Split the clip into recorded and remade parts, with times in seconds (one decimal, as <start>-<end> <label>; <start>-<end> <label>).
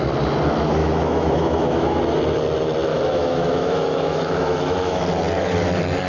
0.0-0.8 recorded; 0.8-2.0 remade; 2.0-2.9 recorded; 2.9-5.0 remade; 5.0-6.1 recorded